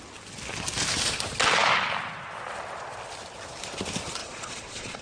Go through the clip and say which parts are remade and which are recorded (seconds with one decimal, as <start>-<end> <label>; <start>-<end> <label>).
0.0-4.2 recorded; 4.2-5.0 remade